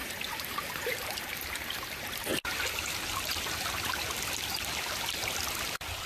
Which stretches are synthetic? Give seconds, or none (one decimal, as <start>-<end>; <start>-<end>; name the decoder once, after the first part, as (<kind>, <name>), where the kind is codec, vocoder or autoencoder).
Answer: 0.0-2.3 (vocoder, BigVGAN v2)